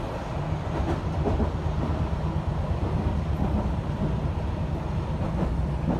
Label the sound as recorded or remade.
recorded